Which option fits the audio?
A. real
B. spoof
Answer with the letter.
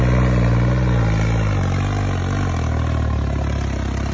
A